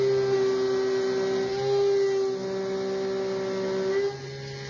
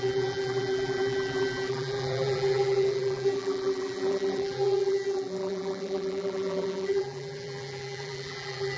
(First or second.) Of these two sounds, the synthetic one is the second